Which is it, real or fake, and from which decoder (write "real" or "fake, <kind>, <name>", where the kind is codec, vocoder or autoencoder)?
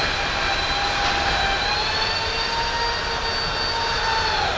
real